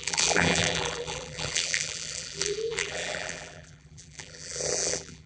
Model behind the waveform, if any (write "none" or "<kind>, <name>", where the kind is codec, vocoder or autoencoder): vocoder, BigVGAN v2